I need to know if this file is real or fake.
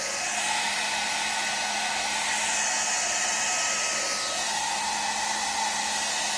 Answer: real